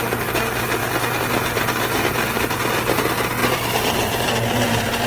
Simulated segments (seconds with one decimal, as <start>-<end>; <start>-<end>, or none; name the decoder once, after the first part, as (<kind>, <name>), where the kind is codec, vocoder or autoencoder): 3.4-4.1 (vocoder, BigVGAN v2)

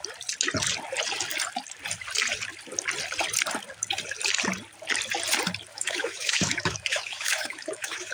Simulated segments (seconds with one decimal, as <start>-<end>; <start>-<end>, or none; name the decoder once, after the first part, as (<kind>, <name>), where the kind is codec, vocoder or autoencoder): 5.7-8.1 (autoencoder, DAC-VAE)